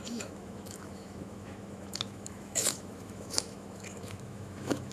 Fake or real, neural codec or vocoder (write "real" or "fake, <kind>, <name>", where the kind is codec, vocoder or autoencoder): fake, autoencoder, DAC-VAE